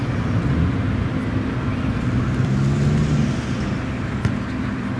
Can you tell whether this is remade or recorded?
recorded